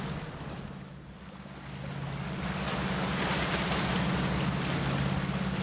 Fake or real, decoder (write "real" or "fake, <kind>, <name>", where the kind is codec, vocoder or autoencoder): real